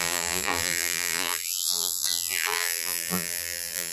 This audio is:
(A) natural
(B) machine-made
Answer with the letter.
B